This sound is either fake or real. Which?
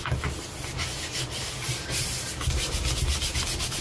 real